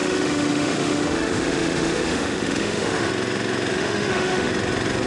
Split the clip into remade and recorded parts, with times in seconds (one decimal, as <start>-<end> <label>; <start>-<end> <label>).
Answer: 0.0-3.1 remade; 3.1-3.7 recorded; 3.7-4.5 remade; 4.5-5.1 recorded